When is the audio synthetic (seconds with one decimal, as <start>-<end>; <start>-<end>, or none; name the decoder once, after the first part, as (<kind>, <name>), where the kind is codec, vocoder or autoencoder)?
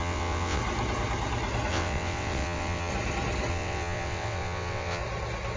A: 0.0-0.6 (vocoder, WaveNeXt); 1.7-2.9; 3.5-5.0